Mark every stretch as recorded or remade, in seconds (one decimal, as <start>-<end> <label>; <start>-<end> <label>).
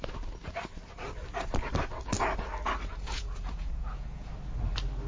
0.0-2.9 recorded; 2.9-4.3 remade; 4.3-5.1 recorded